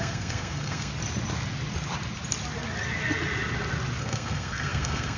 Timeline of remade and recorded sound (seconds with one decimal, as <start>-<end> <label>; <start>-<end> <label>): 0.0-0.9 remade; 0.9-4.0 recorded; 4.0-5.2 remade